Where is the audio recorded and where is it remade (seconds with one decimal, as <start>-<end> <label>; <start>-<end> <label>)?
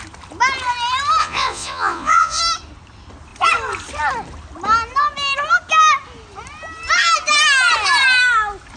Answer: 0.0-1.2 recorded; 1.2-2.4 remade; 2.4-8.8 recorded